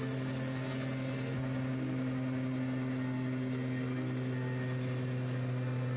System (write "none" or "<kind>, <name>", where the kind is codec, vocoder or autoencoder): none